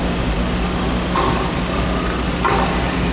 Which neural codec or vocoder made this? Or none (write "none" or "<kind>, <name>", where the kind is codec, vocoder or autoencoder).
none